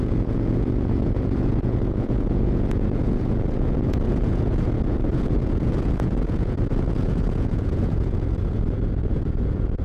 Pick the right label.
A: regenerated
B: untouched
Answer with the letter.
A